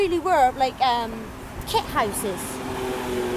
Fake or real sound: real